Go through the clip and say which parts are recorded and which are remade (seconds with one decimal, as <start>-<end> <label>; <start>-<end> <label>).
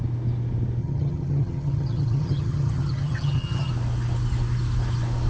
0.0-0.8 recorded; 0.8-3.7 remade; 3.7-5.3 recorded